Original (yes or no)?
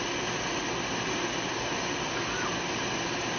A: yes